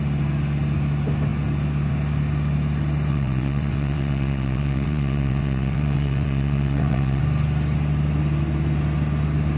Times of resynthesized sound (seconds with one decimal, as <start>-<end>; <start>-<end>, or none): 3.1-7.2